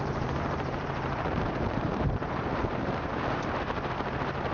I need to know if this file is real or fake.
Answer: fake